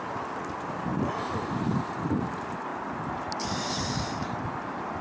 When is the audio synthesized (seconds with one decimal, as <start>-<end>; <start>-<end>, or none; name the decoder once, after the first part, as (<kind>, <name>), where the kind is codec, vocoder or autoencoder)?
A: none